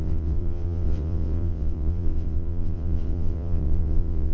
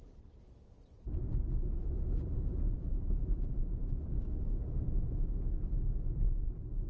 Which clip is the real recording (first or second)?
second